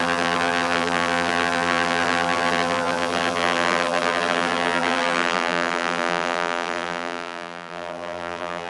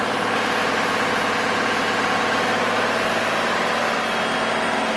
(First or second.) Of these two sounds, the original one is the second